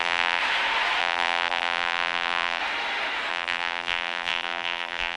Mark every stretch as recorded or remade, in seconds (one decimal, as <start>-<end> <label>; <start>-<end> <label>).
0.0-0.4 remade; 0.4-1.0 recorded; 1.0-2.6 remade; 2.6-3.3 recorded; 3.3-5.2 remade